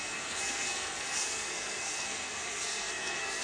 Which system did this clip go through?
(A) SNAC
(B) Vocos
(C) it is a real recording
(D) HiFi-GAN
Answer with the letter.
A